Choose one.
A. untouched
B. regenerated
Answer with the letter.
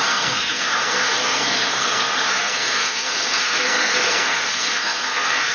B